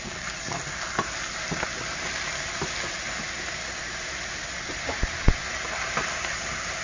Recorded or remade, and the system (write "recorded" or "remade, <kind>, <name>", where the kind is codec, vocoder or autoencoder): recorded